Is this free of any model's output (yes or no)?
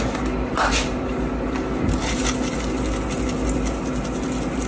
yes